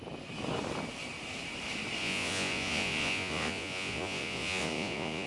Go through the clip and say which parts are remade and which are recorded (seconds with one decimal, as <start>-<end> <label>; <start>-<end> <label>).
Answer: 0.0-2.0 recorded; 2.0-5.3 remade